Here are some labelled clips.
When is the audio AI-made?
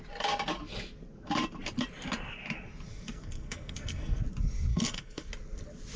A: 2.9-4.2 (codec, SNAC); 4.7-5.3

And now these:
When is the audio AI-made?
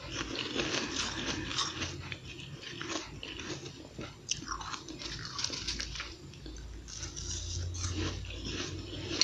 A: none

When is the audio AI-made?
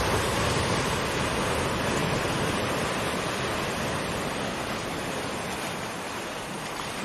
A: none